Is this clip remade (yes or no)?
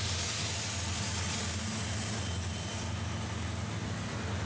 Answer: no